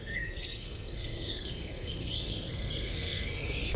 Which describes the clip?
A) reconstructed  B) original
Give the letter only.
A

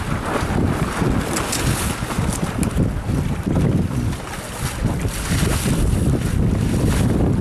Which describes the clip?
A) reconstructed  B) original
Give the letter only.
B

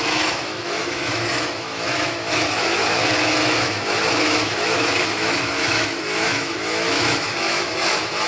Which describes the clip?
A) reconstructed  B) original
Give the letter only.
A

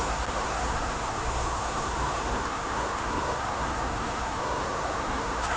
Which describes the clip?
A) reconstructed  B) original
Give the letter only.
A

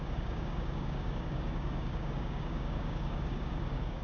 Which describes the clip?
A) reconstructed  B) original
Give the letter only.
A